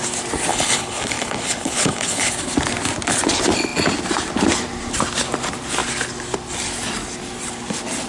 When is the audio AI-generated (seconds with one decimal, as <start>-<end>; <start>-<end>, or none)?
0.5-2.3